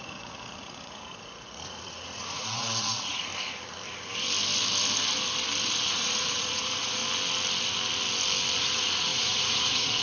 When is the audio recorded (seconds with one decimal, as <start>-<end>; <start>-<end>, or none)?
3.3-5.7; 7.0-8.6